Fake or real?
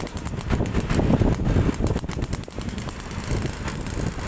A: real